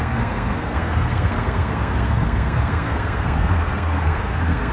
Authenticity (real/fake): fake